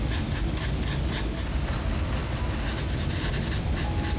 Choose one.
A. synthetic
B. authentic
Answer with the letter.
B